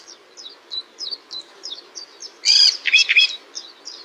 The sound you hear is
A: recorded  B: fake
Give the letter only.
B